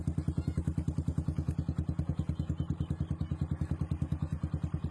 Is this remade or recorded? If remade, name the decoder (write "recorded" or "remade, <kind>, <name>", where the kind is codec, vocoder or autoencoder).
recorded